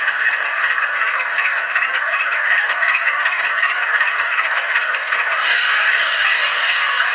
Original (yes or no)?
no